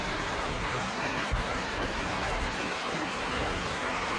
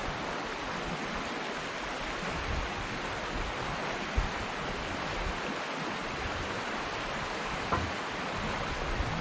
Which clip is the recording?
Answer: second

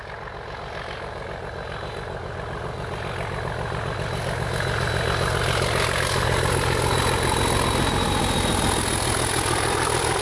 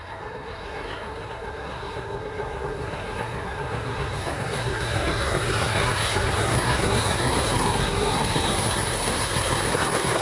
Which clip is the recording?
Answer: first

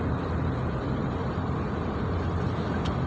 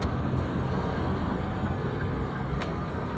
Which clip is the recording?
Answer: first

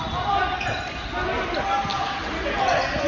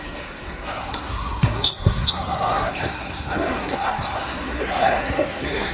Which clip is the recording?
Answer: first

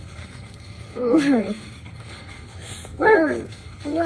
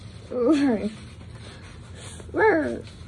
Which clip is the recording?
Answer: second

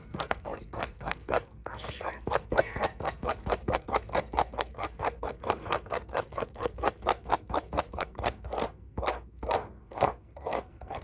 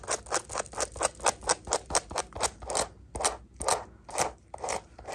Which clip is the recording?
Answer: second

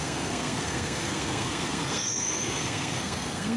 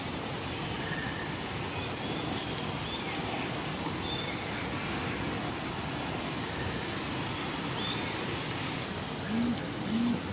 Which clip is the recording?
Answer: second